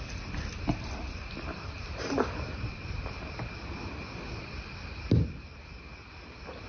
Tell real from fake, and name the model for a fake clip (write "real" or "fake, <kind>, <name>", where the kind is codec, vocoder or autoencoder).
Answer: real